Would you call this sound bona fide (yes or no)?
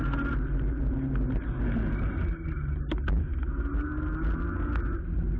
yes